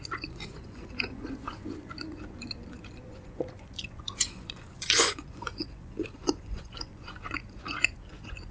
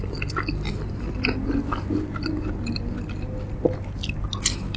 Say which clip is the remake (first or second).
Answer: first